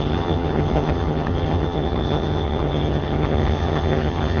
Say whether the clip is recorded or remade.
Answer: remade